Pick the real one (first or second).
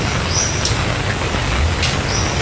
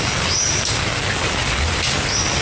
first